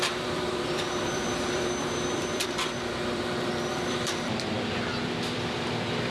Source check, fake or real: fake